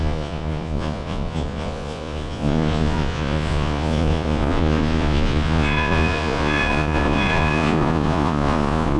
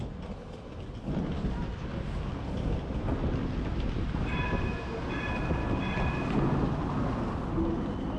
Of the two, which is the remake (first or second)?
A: first